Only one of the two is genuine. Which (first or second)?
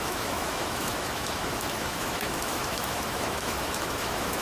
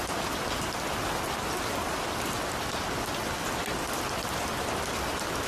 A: second